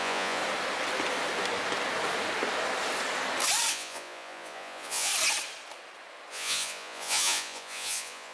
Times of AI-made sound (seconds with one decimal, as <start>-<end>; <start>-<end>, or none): 0.0-0.4; 3.7-5.1; 6.3-8.3